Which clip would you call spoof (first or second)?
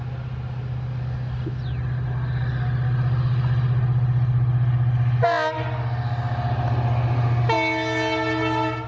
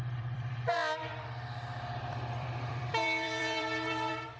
second